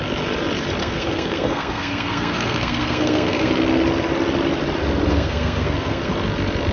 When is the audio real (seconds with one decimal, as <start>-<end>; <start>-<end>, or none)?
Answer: 0.0-0.8; 3.5-5.1; 6.1-6.7